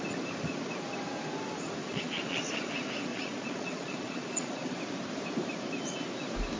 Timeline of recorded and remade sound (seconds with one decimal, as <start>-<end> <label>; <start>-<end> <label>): 0.0-1.8 recorded; 1.8-2.7 remade; 2.7-3.1 recorded; 3.1-4.8 remade; 4.8-6.6 recorded